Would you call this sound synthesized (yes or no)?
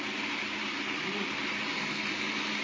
no